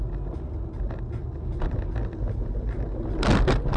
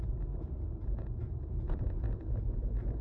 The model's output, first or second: second